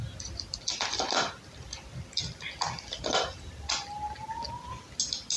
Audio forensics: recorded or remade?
recorded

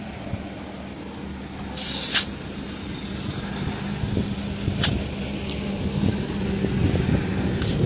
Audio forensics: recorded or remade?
recorded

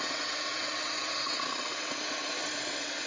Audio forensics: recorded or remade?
remade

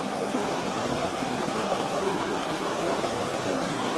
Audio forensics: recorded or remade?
remade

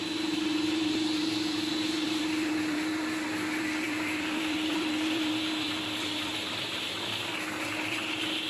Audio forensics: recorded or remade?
remade